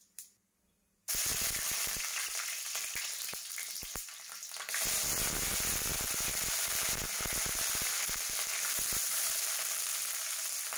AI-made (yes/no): no